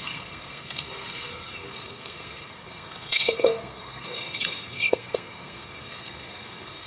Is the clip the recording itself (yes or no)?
no